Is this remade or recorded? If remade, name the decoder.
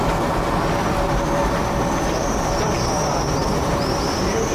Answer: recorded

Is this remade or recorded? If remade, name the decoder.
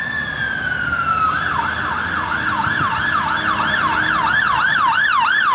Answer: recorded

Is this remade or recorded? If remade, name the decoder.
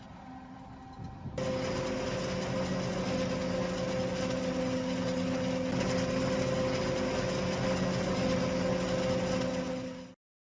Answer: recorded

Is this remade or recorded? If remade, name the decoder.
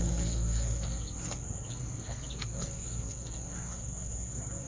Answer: remade, codec, SNAC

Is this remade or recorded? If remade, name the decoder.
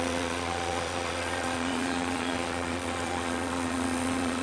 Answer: remade, vocoder, Vocos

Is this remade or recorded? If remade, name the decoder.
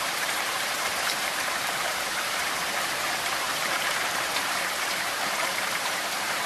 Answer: remade, vocoder, BigVGAN v2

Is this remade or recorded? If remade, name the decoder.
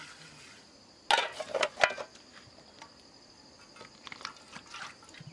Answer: recorded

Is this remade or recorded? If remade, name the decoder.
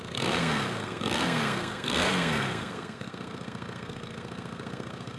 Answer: remade, codec, SNAC